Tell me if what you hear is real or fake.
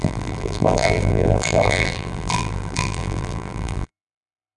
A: fake